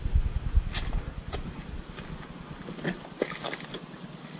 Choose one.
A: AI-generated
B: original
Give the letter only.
B